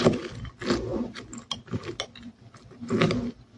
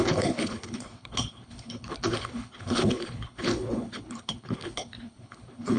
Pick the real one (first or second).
first